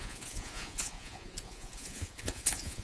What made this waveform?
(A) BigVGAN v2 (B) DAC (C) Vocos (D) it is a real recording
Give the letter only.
C